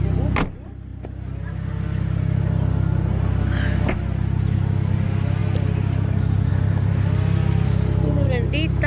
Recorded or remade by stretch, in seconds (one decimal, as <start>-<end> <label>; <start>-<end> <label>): 0.0-8.9 recorded